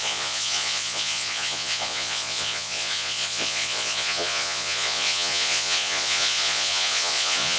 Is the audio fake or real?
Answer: fake